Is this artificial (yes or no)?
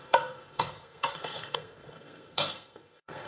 yes